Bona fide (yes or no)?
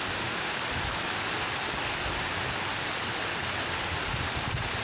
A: yes